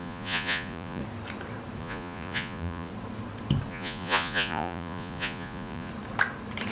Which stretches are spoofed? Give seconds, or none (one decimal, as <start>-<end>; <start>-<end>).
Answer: 0.0-1.0; 1.8-2.9; 3.7-5.9